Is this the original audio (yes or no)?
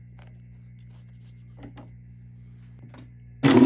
yes